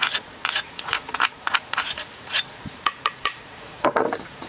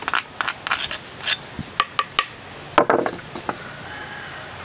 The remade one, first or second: first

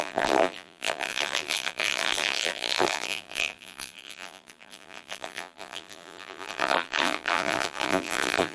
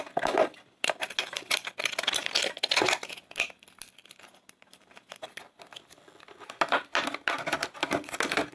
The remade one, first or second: first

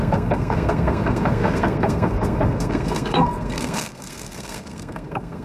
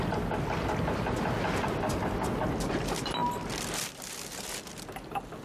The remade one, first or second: first